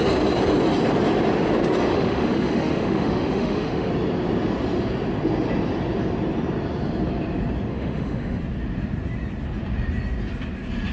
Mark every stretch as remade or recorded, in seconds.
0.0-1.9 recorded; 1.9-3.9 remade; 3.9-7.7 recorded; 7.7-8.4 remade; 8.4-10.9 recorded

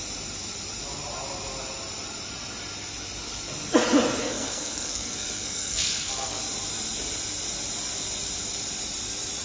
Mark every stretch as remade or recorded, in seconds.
0.0-4.2 recorded; 4.2-6.4 remade; 6.4-9.4 recorded

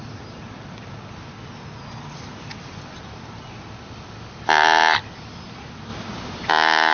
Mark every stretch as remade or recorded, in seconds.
0.0-6.9 recorded

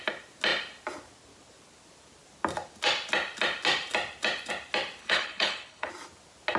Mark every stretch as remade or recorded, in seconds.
0.0-5.0 recorded; 5.0-5.9 remade; 5.9-6.6 recorded